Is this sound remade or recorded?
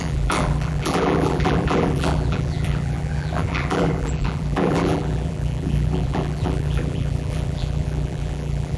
remade